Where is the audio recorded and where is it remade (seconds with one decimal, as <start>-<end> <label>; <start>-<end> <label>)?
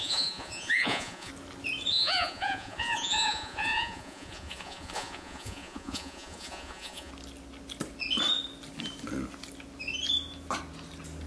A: 0.0-1.3 remade; 1.3-1.9 recorded; 1.9-7.1 remade; 7.1-11.3 recorded